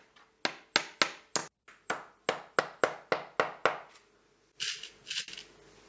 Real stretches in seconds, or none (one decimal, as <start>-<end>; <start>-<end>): 0.0-5.9

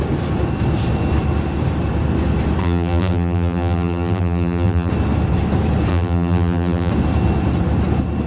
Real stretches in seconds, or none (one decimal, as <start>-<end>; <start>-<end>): 0.0-2.6; 4.9-5.9; 6.9-8.3

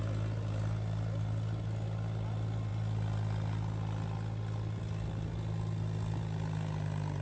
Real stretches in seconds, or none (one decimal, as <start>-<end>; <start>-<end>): 0.0-7.2

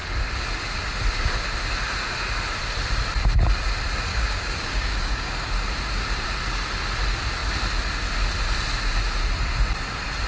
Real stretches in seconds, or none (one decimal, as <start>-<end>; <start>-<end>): 0.0-4.1; 5.6-10.3

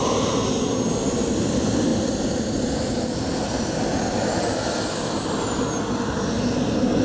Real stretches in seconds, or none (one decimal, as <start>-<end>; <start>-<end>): 0.0-7.0